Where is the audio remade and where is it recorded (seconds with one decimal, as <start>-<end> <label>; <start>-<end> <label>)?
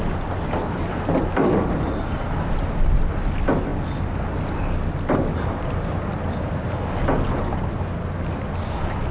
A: 0.0-9.1 recorded